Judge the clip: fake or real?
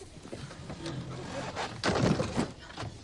real